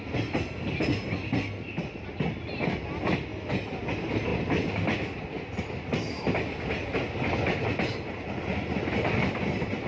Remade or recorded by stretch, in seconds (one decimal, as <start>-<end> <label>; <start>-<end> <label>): 0.0-9.9 recorded